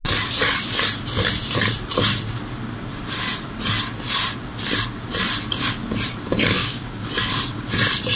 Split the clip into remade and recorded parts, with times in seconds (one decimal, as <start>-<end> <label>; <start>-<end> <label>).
0.0-6.6 recorded; 6.6-7.1 remade; 7.1-8.2 recorded